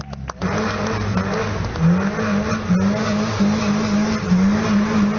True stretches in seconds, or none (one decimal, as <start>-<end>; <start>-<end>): 0.0-5.2